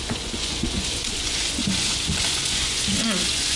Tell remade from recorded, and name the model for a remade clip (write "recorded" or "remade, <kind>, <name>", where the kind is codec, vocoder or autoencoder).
remade, vocoder, Vocos